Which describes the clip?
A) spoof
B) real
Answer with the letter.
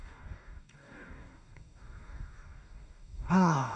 A